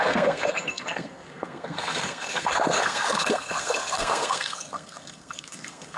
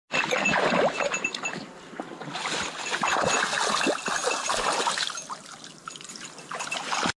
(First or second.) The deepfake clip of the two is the first